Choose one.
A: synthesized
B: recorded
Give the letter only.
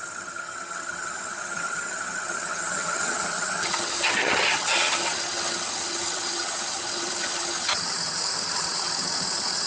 A